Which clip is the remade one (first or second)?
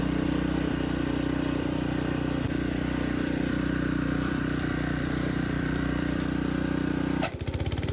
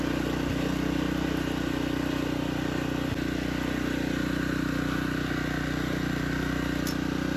first